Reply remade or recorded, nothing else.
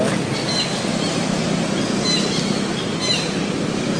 recorded